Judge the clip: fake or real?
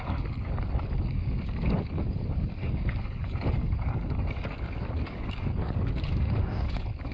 fake